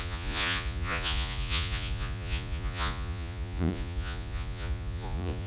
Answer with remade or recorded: remade